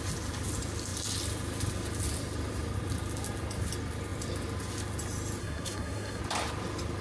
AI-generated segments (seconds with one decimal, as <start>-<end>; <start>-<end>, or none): 5.4-6.2